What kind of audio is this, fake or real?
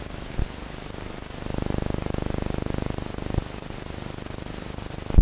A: real